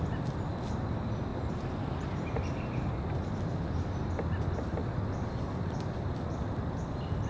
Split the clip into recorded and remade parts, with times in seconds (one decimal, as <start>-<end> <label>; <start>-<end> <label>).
0.0-1.3 recorded; 1.3-3.6 remade; 3.6-7.3 recorded